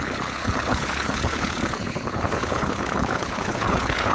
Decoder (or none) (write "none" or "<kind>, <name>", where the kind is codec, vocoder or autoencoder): codec, HILCodec